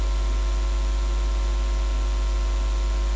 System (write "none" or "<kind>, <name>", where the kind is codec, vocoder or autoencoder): none